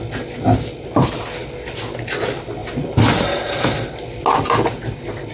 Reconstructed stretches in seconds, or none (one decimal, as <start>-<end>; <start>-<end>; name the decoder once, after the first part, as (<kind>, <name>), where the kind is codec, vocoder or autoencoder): none